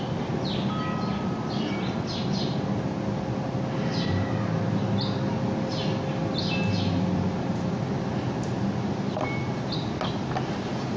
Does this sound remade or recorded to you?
recorded